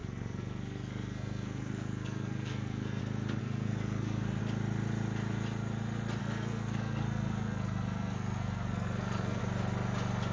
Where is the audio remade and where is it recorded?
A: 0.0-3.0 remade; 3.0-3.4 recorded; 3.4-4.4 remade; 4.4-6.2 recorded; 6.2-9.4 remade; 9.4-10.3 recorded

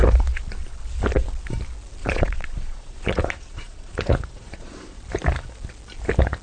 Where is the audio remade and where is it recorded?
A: 0.0-2.0 recorded; 2.0-5.0 remade; 5.0-6.4 recorded

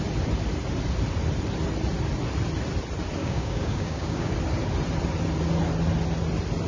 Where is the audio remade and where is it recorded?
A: 0.0-3.2 recorded; 3.2-4.3 remade; 4.3-6.7 recorded

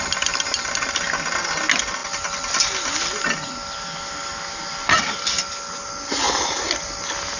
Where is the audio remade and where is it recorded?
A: 0.0-7.4 recorded

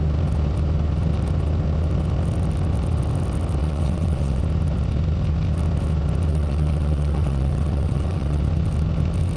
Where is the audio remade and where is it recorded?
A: 0.0-3.6 recorded; 3.6-4.4 remade; 4.4-6.3 recorded; 6.3-8.4 remade; 8.4-9.4 recorded

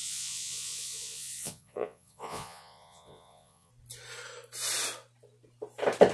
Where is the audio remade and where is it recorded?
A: 0.0-3.7 remade; 3.7-6.1 recorded

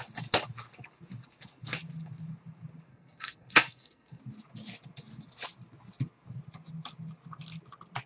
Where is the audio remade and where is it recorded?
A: 0.0-2.9 recorded; 2.9-4.2 remade; 4.2-8.1 recorded